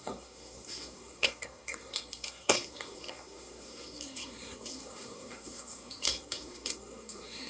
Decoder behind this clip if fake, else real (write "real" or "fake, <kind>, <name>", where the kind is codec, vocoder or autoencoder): fake, codec, SNAC